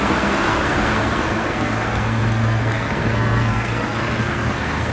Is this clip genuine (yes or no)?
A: no